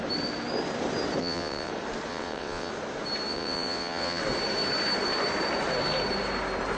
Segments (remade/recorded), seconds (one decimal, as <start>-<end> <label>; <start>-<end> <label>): 0.0-1.2 recorded; 1.2-1.7 remade; 1.7-2.1 recorded; 2.1-2.7 remade; 2.7-3.3 recorded; 3.3-4.2 remade; 4.2-6.8 recorded